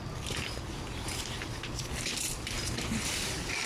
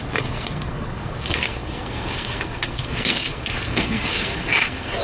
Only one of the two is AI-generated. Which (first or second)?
second